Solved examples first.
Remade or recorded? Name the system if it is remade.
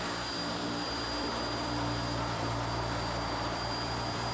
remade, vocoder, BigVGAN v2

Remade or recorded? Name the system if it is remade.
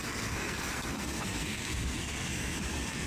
remade, codec, SNAC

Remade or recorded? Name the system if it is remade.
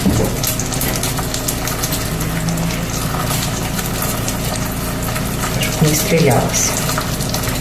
recorded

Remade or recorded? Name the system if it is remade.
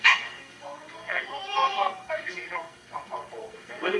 remade, codec, SNAC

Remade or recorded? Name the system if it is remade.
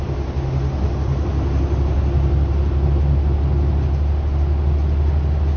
recorded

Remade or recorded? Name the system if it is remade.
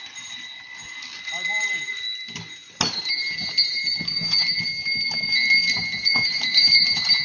recorded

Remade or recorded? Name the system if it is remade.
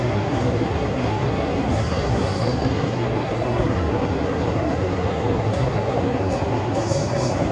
remade, codec, SNAC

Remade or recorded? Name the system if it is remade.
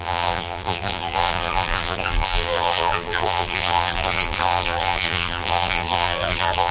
remade, vocoder, BigVGAN v2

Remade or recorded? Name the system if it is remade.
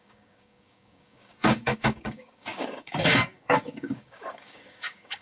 remade, codec, DAC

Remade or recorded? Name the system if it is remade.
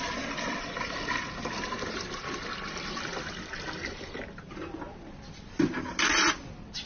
recorded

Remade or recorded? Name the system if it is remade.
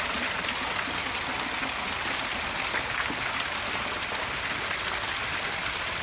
recorded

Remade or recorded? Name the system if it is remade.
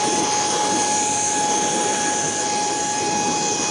remade, vocoder, BigVGAN v2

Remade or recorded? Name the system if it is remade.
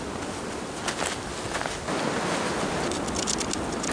recorded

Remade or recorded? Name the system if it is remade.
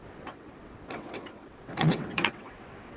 remade, vocoder, WaveNeXt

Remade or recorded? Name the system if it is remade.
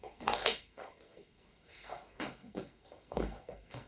remade, codec, SNAC